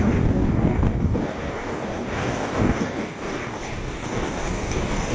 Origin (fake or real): fake